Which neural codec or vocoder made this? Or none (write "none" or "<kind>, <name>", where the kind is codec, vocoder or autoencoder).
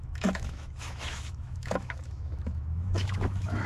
autoencoder, DAC-VAE